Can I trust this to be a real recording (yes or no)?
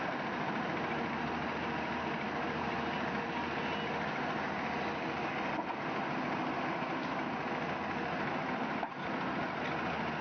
yes